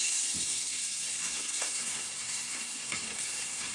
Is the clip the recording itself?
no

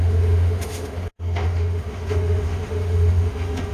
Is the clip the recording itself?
no